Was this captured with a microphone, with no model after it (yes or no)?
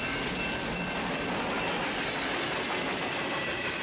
yes